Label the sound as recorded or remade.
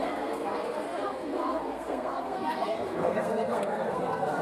remade